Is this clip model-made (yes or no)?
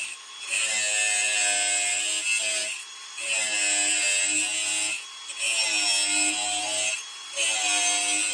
no